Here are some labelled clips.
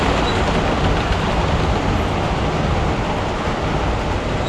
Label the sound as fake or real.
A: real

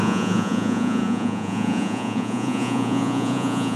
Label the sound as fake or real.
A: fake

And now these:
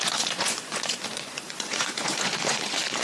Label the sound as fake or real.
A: fake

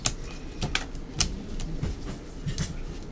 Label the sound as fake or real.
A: real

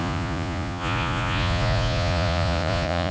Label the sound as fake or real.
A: fake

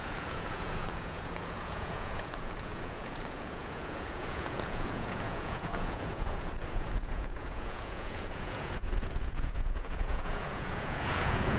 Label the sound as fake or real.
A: fake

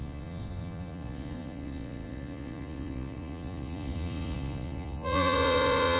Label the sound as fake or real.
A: fake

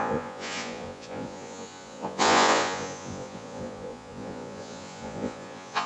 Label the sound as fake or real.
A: fake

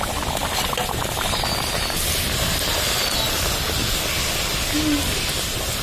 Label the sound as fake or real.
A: real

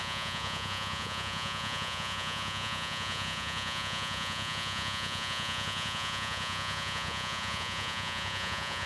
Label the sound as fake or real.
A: fake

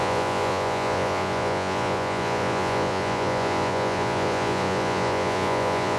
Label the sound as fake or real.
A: fake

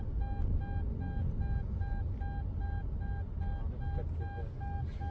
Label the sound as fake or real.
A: real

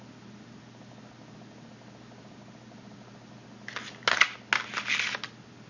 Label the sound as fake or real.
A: real